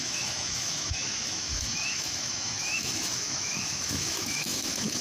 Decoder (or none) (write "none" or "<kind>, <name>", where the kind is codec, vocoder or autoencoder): autoencoder, DAC-VAE